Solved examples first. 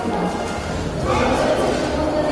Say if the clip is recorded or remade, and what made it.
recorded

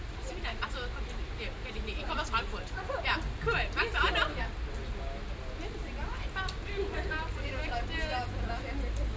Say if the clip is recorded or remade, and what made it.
recorded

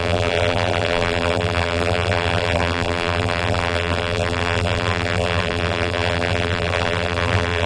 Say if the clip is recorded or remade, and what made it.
remade, vocoder, BigVGAN v2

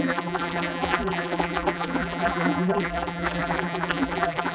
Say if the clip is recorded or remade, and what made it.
remade, vocoder, BigVGAN v2